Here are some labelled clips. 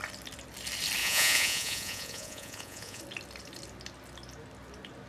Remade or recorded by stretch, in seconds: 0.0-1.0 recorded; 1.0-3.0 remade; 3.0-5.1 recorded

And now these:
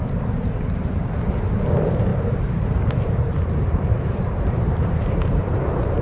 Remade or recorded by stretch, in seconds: 0.0-6.0 remade

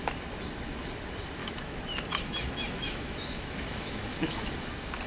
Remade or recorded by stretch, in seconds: 0.0-1.4 recorded; 1.4-4.5 remade; 4.5-5.1 recorded

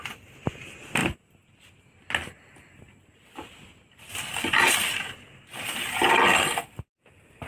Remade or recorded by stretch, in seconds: 0.0-7.5 recorded

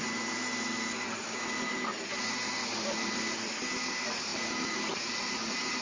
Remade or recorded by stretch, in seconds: 0.0-2.6 recorded; 2.6-3.1 remade; 3.1-4.3 recorded; 4.3-5.8 remade

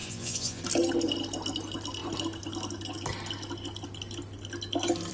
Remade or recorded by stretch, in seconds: 0.0-0.6 remade; 0.6-5.1 recorded

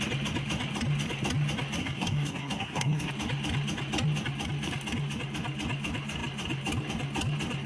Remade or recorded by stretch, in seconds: 0.0-1.8 recorded; 1.8-3.1 remade; 3.1-7.7 recorded

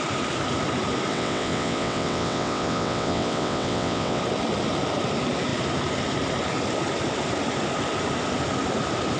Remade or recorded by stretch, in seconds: 0.0-1.1 recorded; 1.1-4.2 remade; 4.2-9.2 recorded